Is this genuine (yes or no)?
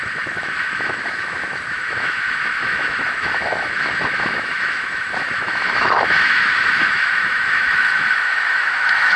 no